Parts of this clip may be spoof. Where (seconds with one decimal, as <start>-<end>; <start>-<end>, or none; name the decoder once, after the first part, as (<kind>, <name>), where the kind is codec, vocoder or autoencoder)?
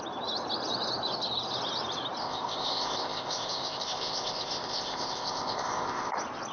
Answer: 2.2-6.1 (codec, ZipCodec)